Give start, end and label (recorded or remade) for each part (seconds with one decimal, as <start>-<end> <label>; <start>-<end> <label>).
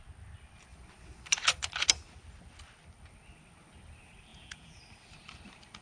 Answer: 0.0-4.3 recorded; 4.3-4.8 remade; 4.8-5.8 recorded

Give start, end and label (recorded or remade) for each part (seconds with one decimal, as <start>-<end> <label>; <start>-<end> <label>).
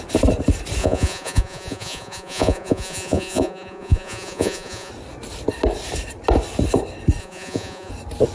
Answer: 0.0-0.8 recorded; 0.8-4.9 remade; 4.9-7.2 recorded; 7.2-7.9 remade; 7.9-8.3 recorded